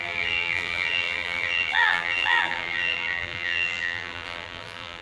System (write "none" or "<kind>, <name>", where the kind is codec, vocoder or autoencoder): vocoder, BigVGAN v2